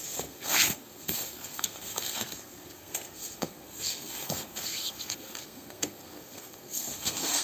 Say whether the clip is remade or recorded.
remade